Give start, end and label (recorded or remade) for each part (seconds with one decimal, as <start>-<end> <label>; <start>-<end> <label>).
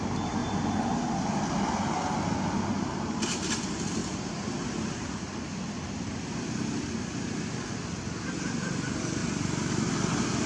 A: 0.0-0.4 recorded; 0.4-1.1 remade; 1.1-4.0 recorded; 4.0-7.6 remade; 7.6-9.2 recorded; 9.2-9.9 remade; 9.9-10.5 recorded